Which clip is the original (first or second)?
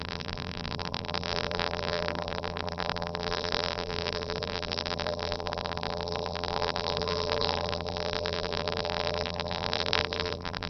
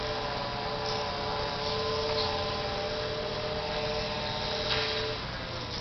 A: second